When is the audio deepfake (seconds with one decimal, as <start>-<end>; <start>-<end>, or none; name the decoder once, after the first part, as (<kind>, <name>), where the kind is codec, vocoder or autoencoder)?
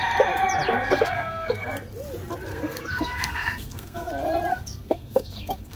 0.7-1.7 (codec, SNAC); 2.5-4.1; 4.5-5.8